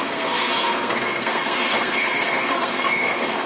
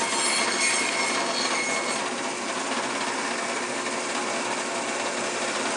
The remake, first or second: first